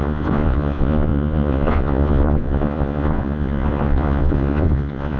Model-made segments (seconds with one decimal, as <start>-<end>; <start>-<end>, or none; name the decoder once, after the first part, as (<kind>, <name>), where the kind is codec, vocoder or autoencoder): 0.0-5.2 (vocoder, Vocos)